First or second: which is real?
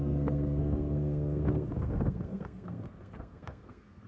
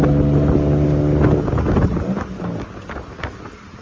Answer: second